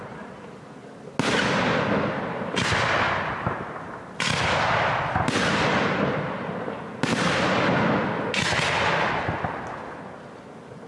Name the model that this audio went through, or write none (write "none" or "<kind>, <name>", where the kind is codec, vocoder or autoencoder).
none